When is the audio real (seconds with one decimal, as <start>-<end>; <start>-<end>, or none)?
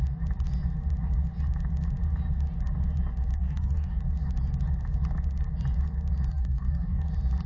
0.0-3.3; 4.0-6.3; 7.1-7.5